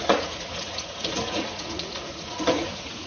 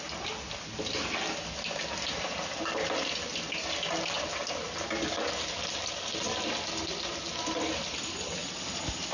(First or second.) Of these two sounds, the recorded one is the second